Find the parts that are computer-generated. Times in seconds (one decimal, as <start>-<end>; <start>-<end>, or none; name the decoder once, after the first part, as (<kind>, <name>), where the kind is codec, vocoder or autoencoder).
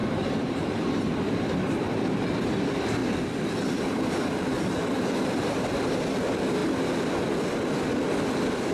0.0-1.0 (vocoder, BigVGAN v2); 4.8-6.0